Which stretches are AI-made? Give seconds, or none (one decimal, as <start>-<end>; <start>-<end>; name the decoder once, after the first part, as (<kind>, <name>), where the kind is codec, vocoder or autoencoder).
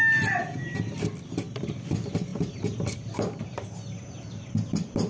none